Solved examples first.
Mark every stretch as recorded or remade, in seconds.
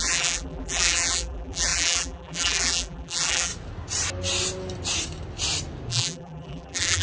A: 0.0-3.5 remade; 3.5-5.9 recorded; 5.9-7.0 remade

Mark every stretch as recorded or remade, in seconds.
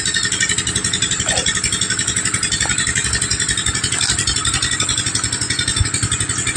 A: 0.0-6.6 recorded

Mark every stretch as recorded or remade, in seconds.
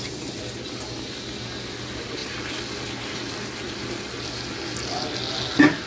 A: 0.0-5.9 recorded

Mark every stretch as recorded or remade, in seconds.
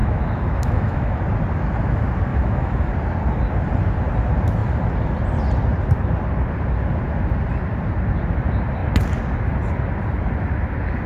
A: 0.0-1.2 remade; 1.2-2.3 recorded; 2.3-2.9 remade; 2.9-11.1 recorded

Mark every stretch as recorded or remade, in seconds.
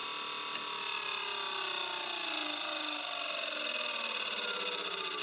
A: 0.0-5.2 recorded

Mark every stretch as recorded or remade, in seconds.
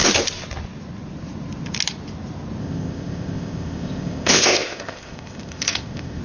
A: 0.0-2.6 recorded; 2.6-6.2 remade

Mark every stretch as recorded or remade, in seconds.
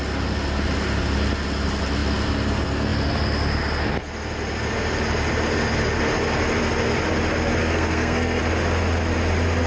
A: 0.0-7.6 recorded; 7.6-8.4 remade; 8.4-9.7 recorded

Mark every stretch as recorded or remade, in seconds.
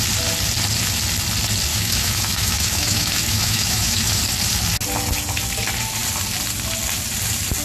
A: 0.0-1.7 recorded; 1.7-4.2 remade; 4.2-7.6 recorded